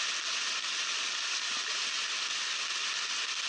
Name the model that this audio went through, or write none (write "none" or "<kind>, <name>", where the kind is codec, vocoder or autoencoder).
none